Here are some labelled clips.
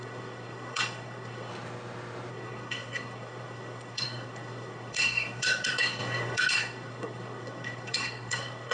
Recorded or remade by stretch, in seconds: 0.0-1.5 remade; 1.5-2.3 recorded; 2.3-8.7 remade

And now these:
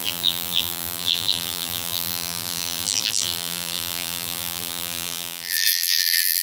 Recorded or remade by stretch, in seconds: 0.0-6.4 remade

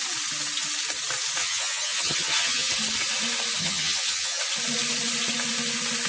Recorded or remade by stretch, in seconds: 0.0-1.4 recorded; 1.4-2.7 remade; 2.7-3.6 recorded; 3.6-4.4 remade; 4.4-6.1 recorded

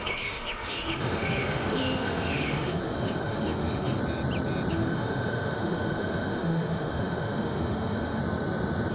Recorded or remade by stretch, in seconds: 0.0-4.0 remade; 4.0-4.7 recorded; 4.7-8.2 remade; 8.2-8.9 recorded

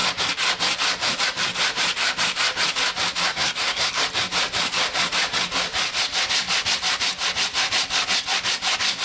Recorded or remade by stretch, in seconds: 0.0-3.3 recorded; 3.3-4.0 remade; 4.0-9.0 recorded

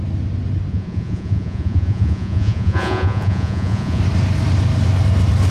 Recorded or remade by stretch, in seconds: 0.0-0.7 recorded; 0.7-4.0 remade; 4.0-5.5 recorded